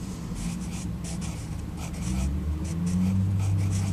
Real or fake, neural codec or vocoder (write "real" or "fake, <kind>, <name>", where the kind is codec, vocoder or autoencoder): real